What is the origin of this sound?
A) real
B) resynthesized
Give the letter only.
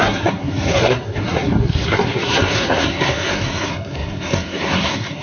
B